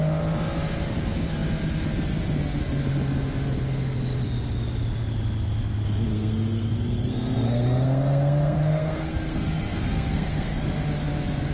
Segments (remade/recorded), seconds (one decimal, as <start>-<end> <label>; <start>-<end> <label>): 0.0-6.1 recorded; 6.1-10.6 remade; 10.6-11.5 recorded